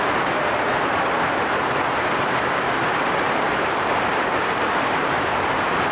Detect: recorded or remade remade